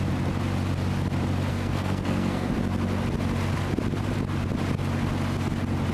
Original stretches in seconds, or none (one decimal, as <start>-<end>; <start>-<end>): 0.0-1.5; 2.5-5.9